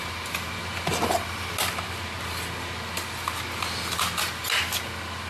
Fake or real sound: real